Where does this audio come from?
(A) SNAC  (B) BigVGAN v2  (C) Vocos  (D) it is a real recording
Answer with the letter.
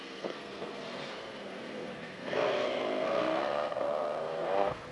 A